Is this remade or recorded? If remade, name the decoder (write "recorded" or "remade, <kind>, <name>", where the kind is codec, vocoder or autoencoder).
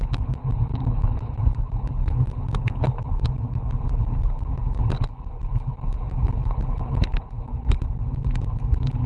remade, codec, HILCodec